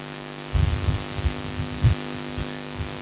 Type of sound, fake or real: real